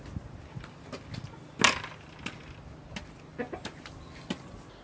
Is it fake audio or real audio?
real